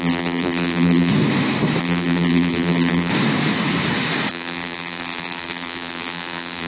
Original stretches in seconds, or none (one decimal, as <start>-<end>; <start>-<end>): 1.1-1.8; 3.1-4.3